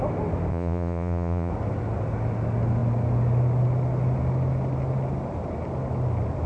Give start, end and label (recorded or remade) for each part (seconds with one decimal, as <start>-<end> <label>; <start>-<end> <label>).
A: 0.0-0.5 recorded; 0.5-1.5 remade; 1.5-6.5 recorded